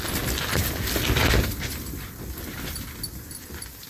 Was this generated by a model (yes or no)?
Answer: no